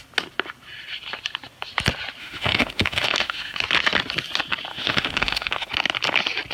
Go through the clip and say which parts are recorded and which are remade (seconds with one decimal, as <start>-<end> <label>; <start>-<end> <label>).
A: 0.0-2.2 recorded; 2.2-3.6 remade; 3.6-4.7 recorded; 4.7-5.7 remade; 5.7-6.5 recorded